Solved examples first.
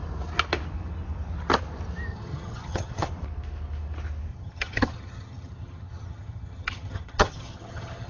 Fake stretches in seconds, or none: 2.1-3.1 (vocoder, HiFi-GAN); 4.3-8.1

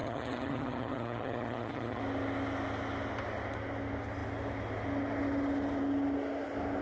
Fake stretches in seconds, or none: 0.0-2.0 (vocoder, HiFi-GAN)

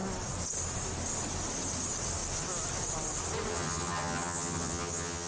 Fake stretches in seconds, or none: 3.5-5.3 (vocoder, HiFi-GAN)

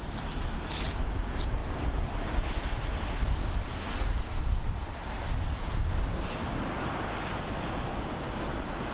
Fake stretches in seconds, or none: none

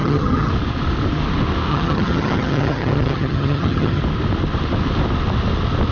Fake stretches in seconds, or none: 0.0-0.5 (vocoder, HiFi-GAN); 1.7-4.0

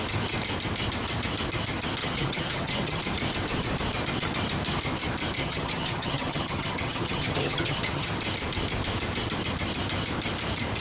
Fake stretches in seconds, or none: 2.0-3.0 (vocoder, HiFi-GAN); 5.4-8.1